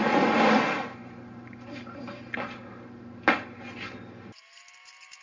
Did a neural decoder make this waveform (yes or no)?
no